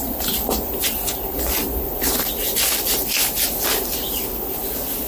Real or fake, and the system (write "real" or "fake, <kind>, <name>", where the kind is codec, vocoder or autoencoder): real